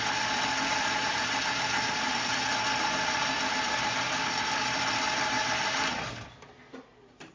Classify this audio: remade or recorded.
remade